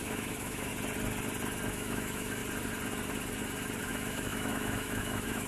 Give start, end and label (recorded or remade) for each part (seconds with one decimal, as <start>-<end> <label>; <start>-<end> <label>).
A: 0.0-0.7 remade; 0.7-1.7 recorded; 1.7-2.4 remade; 2.4-3.8 recorded; 3.8-5.5 remade